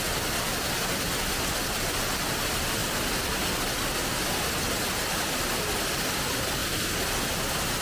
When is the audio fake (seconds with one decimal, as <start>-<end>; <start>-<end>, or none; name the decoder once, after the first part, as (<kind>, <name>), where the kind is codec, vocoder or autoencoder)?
none